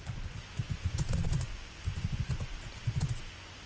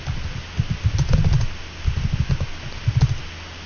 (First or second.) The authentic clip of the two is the second